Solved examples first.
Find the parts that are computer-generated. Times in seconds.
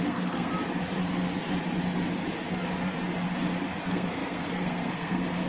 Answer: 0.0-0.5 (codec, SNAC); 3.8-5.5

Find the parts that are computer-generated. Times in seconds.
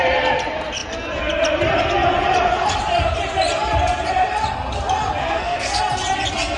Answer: 5.2-5.8 (codec, SNAC)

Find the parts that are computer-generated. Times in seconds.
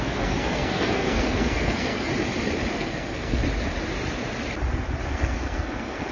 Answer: 0.0-2.1 (codec, SNAC); 2.7-3.4; 5.1-6.1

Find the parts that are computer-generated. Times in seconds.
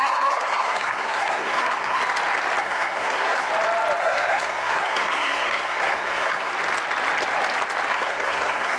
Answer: 0.0-2.0 (codec, SNAC); 2.6-3.5; 4.0-6.5; 7.9-8.8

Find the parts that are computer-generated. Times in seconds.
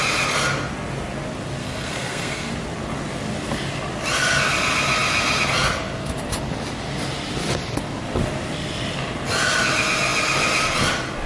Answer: 1.6-2.5 (codec, SNAC)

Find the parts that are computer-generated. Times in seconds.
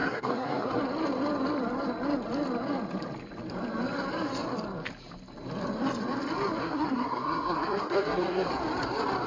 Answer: 0.0-0.8 (codec, SNAC); 6.6-8.5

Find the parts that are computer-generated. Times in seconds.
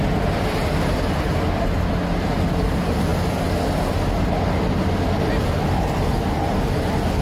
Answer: none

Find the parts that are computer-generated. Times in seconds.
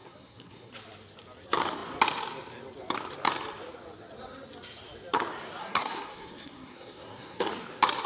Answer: 0.0-0.7 (codec, SNAC); 5.6-7.5